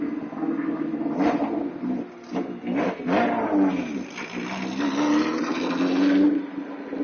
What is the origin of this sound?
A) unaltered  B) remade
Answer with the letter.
A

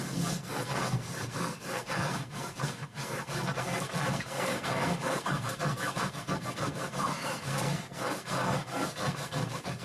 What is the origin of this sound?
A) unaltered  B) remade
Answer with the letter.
B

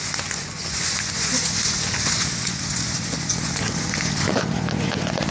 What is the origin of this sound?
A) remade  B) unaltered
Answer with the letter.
A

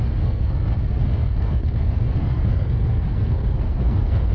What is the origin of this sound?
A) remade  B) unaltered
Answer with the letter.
A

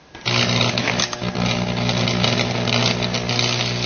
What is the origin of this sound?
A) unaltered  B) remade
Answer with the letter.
A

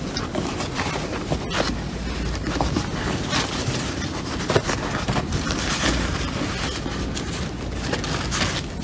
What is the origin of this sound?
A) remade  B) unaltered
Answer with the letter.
B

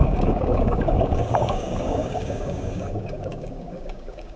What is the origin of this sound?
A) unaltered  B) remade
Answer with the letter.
B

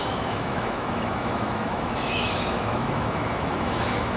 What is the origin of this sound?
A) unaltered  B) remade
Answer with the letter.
B